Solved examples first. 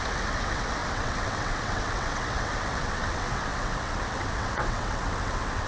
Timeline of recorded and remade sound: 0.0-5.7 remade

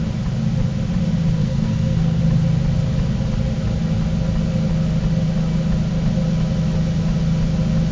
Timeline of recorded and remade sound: 0.0-1.4 recorded; 1.4-2.2 remade; 2.2-7.9 recorded

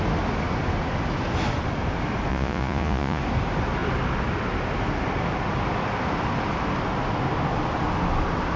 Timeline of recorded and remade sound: 0.0-2.3 recorded; 2.3-3.2 remade; 3.2-8.6 recorded